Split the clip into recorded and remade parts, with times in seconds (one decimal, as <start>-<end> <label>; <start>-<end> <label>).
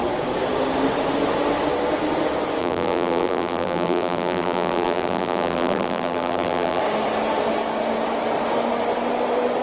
0.0-2.6 recorded; 2.6-6.8 remade; 6.8-9.6 recorded